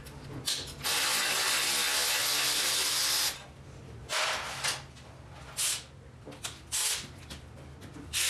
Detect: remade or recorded recorded